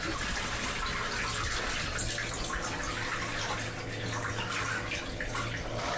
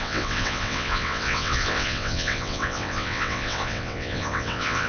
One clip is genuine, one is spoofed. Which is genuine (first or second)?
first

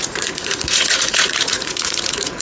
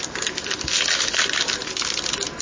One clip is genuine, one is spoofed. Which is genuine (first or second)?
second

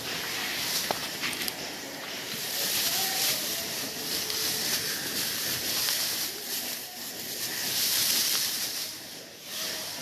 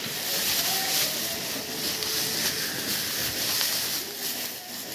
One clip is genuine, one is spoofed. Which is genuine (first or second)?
second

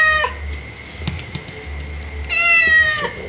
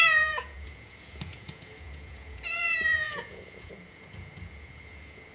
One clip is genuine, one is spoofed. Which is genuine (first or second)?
first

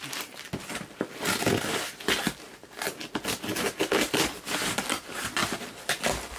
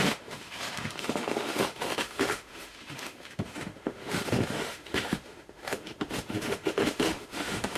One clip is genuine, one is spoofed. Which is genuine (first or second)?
first